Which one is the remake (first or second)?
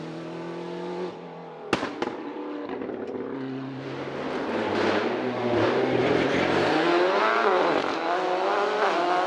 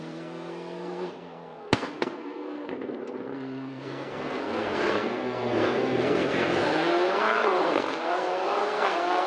second